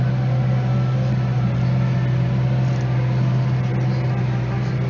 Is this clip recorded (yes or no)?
yes